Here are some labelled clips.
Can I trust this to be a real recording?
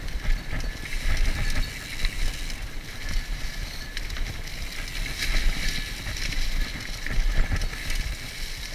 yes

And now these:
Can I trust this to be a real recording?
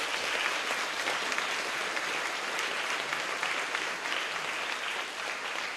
yes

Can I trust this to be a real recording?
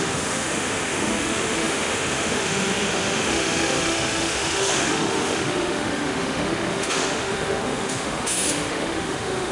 no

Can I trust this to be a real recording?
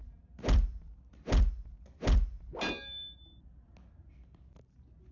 yes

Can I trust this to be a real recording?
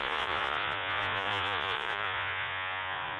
no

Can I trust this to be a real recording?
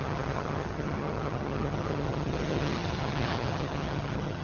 no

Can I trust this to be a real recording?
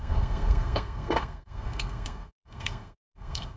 no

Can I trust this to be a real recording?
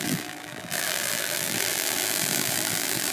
no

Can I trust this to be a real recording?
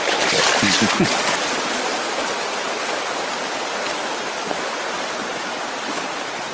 yes